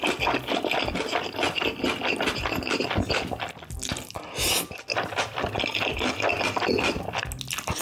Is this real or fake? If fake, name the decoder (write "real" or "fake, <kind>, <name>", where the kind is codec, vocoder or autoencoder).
real